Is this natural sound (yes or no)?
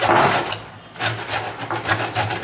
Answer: yes